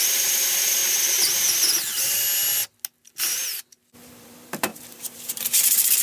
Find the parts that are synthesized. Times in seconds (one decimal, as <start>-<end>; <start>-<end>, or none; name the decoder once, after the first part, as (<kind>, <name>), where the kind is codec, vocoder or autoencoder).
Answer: 0.0-0.8 (vocoder, BigVGAN v2); 4.0-6.0

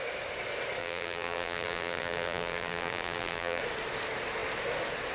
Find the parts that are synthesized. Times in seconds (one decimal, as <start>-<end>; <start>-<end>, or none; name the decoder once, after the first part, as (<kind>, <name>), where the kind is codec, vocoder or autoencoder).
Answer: 0.8-3.6 (vocoder, BigVGAN v2)

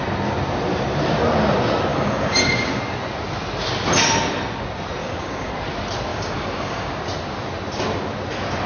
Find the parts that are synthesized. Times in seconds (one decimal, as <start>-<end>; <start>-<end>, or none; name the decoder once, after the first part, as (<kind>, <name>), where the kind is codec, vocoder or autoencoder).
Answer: 1.9-2.8 (codec, DAC); 5.0-5.5; 6.1-7.0

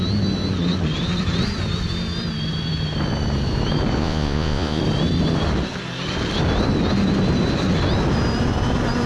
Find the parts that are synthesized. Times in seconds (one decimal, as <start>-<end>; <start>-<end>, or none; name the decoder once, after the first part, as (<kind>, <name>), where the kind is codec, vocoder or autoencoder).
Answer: 4.0-4.8 (vocoder, Vocos)

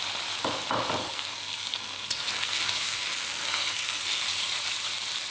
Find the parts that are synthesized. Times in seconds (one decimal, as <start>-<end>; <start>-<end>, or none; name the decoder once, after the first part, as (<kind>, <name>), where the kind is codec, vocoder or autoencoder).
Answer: 1.0-4.2 (codec, SNAC)

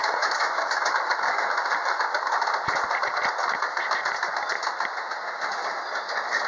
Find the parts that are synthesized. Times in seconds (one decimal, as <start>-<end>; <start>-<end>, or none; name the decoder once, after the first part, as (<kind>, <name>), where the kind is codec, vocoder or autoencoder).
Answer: 0.0-2.0 (autoencoder, DAC-VAE)